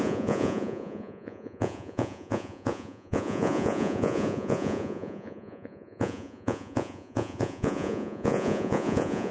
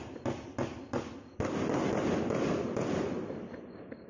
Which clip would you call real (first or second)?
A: second